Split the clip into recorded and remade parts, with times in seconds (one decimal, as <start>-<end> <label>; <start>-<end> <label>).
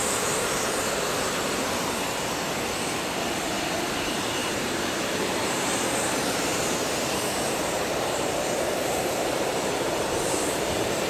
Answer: 0.0-0.9 remade; 0.9-4.4 recorded; 4.4-5.7 remade; 5.7-6.5 recorded; 6.5-10.6 remade; 10.6-11.1 recorded